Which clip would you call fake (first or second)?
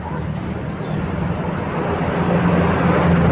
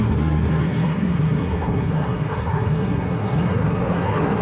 second